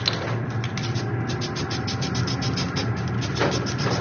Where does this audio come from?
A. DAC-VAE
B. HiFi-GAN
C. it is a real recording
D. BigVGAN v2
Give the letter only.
C